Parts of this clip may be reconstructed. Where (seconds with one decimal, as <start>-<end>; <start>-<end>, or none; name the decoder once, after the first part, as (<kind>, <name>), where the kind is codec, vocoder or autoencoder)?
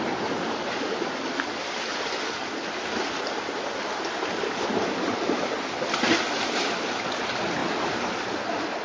none